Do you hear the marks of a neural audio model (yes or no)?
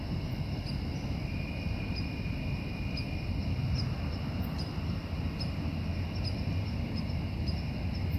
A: no